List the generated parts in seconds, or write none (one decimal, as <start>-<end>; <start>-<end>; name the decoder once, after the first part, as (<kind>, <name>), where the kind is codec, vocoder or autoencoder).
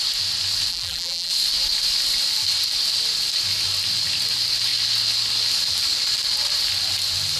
0.7-1.3 (vocoder, BigVGAN v2)